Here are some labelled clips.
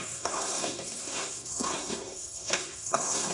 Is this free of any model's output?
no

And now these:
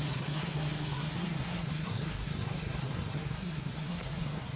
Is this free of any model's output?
no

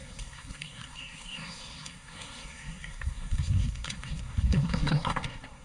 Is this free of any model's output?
no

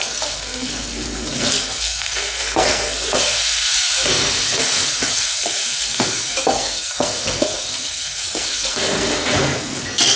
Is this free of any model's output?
no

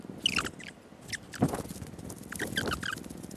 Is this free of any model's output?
yes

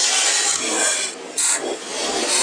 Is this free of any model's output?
yes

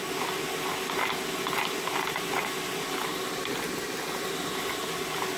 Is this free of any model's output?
yes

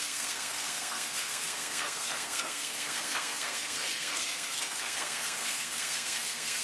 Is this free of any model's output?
no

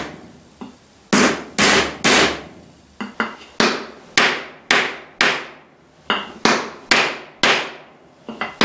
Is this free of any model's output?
yes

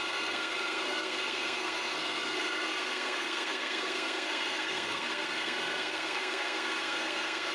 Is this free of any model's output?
no